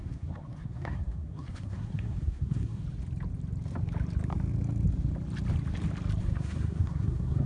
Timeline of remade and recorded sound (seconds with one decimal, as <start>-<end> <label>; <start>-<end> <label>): 0.0-2.8 remade; 2.8-6.2 recorded; 6.2-7.5 remade